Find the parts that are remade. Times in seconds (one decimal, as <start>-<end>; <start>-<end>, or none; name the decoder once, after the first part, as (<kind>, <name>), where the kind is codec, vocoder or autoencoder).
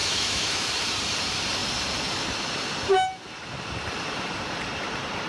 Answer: 0.0-0.7 (autoencoder, DAC-VAE)